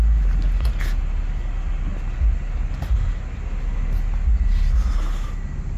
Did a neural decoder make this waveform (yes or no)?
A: no